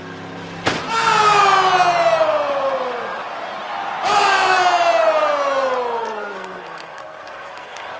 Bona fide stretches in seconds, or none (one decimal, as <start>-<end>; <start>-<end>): 0.0-6.0